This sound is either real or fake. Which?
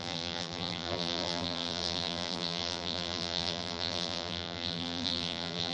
fake